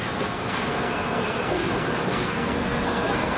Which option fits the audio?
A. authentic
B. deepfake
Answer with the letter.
B